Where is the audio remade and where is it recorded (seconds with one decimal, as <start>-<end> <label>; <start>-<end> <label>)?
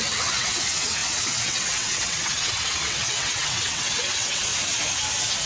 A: 0.0-4.5 remade; 4.5-5.5 recorded